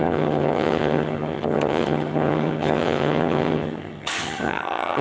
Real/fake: fake